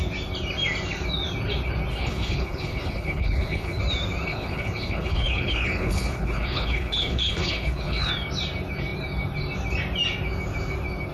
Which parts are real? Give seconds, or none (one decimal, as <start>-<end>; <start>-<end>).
0.0-1.9; 3.8-4.3; 8.1-11.1